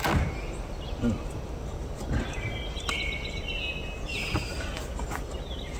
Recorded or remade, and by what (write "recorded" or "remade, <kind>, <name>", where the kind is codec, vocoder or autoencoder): recorded